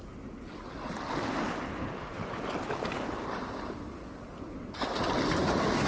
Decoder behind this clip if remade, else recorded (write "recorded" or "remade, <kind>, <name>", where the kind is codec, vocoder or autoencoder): recorded